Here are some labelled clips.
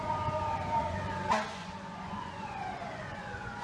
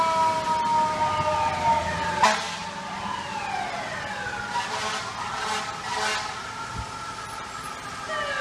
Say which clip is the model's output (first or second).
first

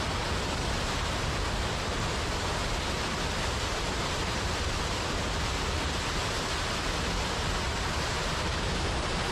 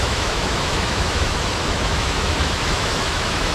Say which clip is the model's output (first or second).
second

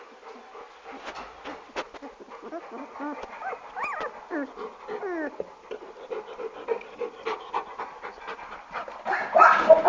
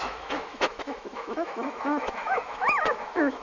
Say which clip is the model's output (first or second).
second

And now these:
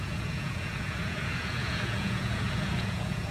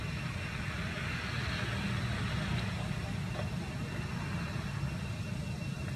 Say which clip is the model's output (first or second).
first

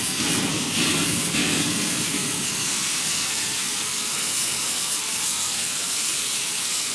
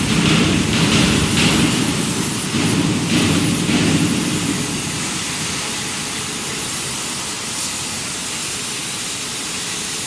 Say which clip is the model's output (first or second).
first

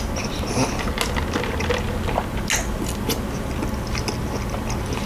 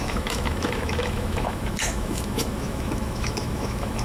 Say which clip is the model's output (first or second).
second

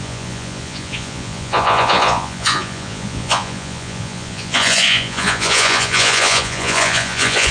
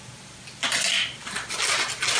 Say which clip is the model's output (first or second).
first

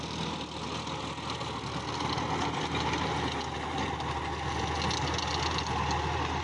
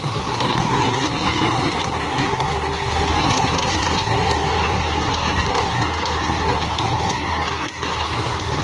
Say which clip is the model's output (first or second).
second